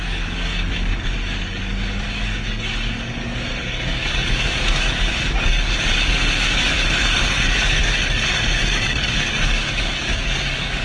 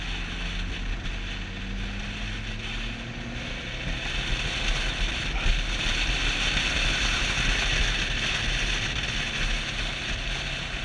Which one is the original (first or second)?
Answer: second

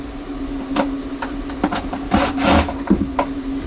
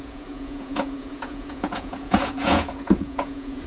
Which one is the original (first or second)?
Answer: first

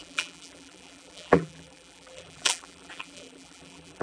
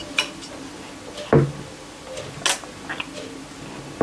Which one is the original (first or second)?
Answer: second